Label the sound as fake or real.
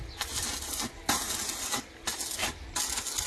real